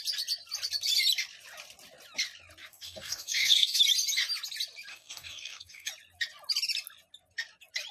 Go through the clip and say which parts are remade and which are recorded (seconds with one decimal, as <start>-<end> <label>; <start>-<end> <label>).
0.0-2.7 recorded; 2.7-3.8 remade; 3.8-4.9 recorded; 4.9-5.9 remade; 5.9-7.9 recorded